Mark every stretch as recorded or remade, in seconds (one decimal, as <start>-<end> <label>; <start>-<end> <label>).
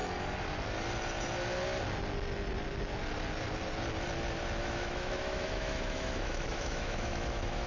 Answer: 0.0-4.6 recorded; 4.6-7.7 remade